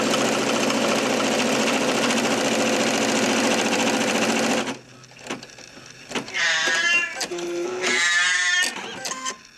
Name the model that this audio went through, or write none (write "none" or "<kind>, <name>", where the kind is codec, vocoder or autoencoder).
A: none